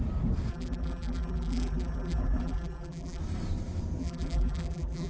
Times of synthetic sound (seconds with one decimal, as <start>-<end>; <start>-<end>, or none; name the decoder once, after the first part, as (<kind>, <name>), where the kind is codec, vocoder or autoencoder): 0.5-3.2 (vocoder, BigVGAN v2); 4.0-5.1